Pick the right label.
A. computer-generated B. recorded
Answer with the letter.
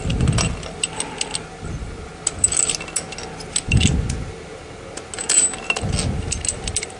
B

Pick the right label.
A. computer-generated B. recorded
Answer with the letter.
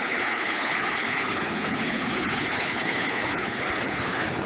A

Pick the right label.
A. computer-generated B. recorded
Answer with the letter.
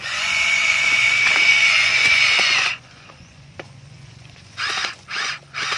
A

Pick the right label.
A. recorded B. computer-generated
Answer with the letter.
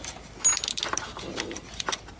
B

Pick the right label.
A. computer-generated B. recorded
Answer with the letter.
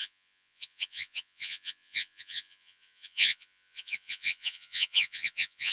A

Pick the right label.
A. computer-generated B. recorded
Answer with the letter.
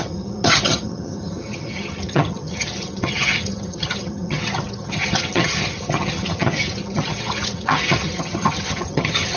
A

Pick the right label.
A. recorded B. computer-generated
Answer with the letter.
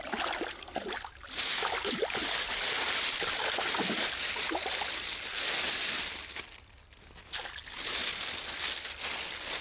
A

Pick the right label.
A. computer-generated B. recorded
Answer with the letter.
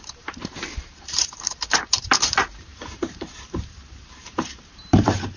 A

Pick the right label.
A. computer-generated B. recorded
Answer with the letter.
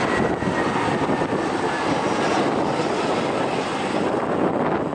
B